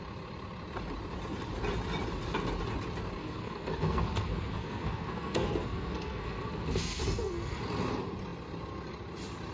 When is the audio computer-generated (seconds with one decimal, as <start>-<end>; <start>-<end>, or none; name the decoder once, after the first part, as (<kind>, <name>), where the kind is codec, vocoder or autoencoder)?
3.2-7.6 (codec, SNAC)